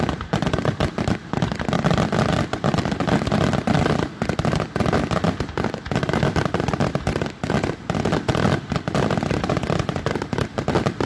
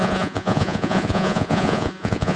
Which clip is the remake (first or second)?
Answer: second